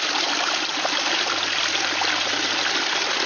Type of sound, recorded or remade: recorded